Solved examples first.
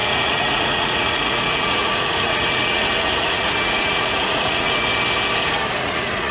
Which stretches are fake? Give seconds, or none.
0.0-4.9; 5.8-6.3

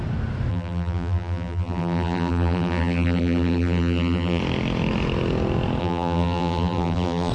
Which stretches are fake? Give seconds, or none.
0.5-4.4; 5.8-7.3

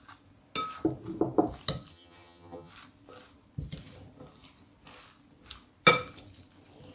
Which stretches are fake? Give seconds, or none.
1.9-2.7